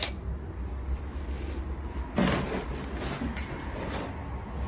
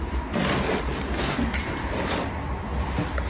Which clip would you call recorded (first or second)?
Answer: first